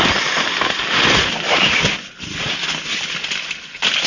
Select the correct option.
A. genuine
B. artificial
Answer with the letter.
A